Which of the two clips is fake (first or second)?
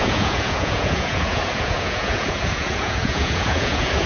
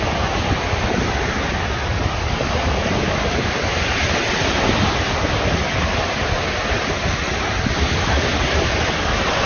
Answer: first